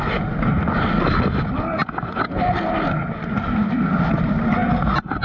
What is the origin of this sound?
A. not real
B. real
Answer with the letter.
B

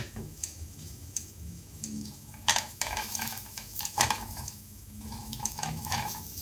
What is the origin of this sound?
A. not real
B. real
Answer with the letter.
A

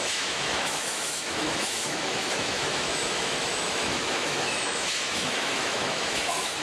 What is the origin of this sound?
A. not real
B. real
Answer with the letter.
A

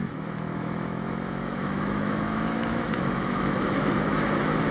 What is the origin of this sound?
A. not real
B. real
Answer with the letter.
A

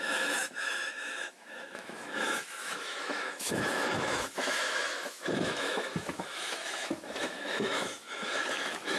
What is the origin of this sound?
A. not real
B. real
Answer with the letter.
A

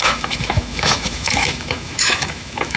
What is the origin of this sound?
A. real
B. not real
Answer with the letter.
B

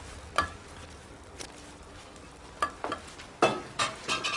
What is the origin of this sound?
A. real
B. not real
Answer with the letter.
A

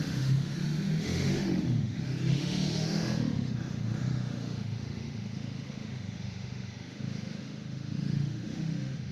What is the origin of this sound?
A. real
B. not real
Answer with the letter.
B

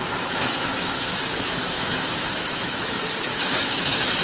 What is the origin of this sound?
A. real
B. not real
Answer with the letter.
B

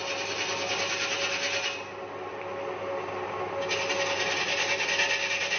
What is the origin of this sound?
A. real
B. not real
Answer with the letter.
A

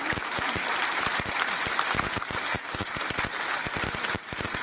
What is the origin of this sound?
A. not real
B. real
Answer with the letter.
B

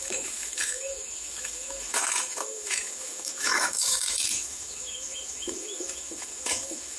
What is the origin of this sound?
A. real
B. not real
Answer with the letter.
B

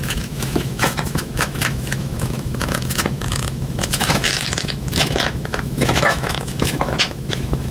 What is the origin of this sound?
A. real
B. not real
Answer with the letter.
B